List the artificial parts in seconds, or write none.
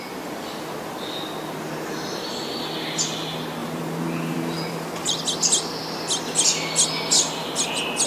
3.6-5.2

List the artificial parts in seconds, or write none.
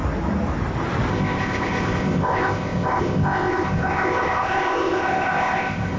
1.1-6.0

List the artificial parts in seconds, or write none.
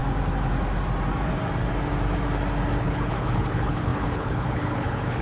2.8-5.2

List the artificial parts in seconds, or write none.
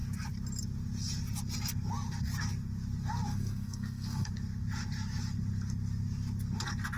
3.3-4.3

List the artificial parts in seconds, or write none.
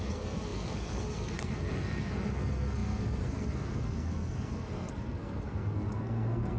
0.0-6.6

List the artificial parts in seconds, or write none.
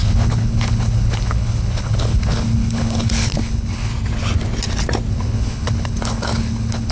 0.0-3.9; 5.1-6.9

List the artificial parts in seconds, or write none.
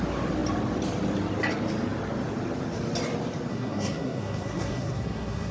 3.5-5.5